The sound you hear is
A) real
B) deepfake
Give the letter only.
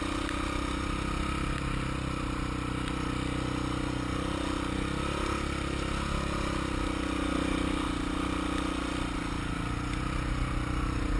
A